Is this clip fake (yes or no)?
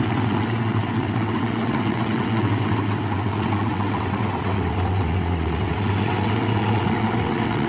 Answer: yes